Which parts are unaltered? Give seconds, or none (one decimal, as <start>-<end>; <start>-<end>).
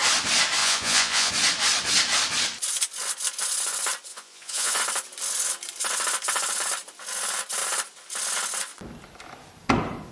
0.0-0.6; 1.3-4.1; 4.8-10.1